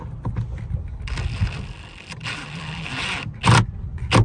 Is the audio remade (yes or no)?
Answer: no